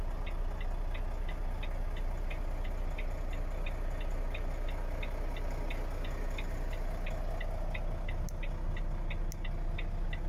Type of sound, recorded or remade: recorded